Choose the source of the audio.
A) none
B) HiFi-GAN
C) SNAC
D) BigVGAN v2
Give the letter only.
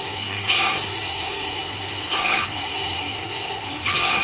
C